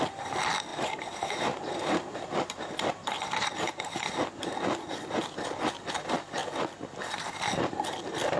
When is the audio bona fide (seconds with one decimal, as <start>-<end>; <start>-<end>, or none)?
0.0-0.7; 3.5-8.4